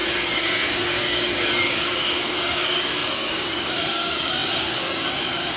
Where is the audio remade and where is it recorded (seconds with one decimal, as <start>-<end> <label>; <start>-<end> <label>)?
0.0-5.6 remade